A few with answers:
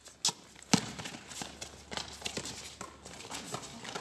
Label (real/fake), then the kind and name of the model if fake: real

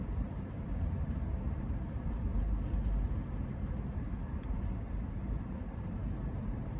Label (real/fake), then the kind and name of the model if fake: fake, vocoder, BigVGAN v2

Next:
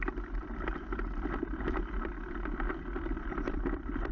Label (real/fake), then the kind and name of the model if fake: fake, vocoder, BigVGAN v2